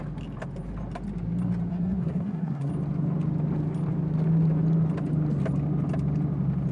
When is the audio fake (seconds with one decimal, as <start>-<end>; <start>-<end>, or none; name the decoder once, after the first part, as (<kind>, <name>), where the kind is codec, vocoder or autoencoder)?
1.7-2.7 (codec, SNAC)